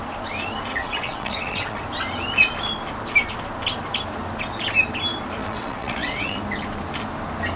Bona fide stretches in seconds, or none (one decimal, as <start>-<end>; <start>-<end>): 0.0-0.7; 1.8-5.4; 6.4-7.6